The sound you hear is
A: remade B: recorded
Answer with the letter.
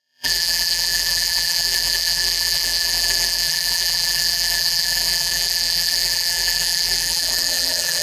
A